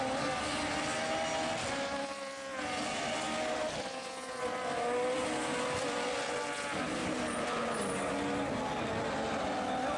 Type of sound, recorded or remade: recorded